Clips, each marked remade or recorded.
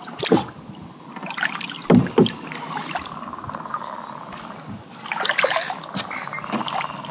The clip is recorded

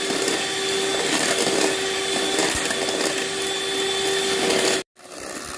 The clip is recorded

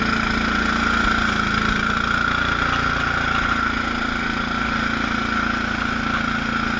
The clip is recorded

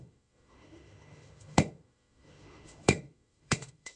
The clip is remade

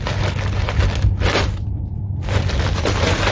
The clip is recorded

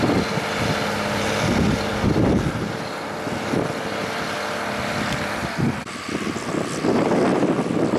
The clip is recorded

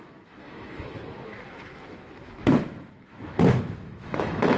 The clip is remade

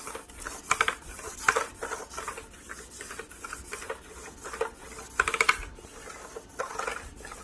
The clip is recorded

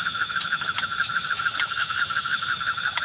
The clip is remade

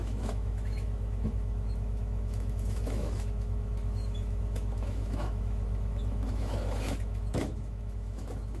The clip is remade